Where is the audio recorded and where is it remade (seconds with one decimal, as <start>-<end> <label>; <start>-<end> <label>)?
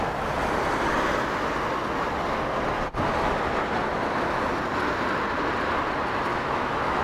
0.0-6.3 recorded; 6.3-7.0 remade